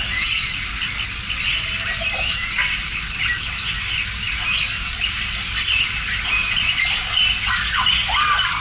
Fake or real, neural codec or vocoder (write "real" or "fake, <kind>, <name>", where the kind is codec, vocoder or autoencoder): real